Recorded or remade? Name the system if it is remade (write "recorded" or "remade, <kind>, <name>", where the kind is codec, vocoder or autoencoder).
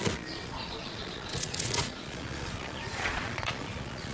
remade, vocoder, Vocos